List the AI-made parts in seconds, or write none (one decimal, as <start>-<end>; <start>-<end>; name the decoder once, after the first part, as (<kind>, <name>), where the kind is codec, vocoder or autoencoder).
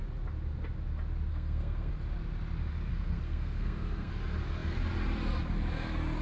1.3-1.9 (codec, SNAC); 2.9-4.1